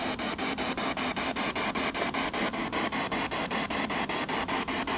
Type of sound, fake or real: real